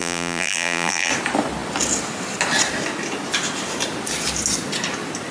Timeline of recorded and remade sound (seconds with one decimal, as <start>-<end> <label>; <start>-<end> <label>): 0.0-1.1 remade; 1.1-5.3 recorded